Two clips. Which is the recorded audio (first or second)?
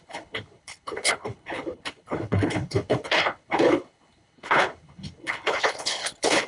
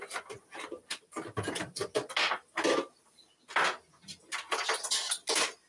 second